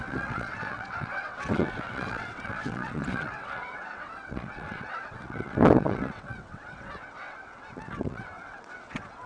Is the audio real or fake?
fake